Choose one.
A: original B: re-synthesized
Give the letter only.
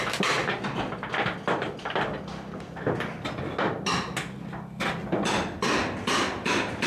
A